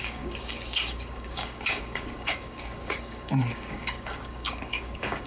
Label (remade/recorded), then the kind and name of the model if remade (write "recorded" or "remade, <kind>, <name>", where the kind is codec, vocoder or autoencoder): remade, codec, DAC